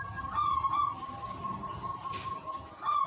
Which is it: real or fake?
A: real